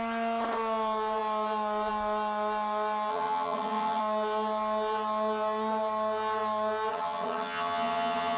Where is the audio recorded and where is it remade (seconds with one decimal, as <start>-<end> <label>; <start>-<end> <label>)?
0.0-3.1 recorded; 3.1-4.0 remade; 4.0-6.9 recorded; 6.9-8.4 remade